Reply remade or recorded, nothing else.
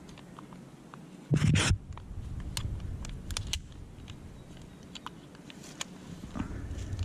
recorded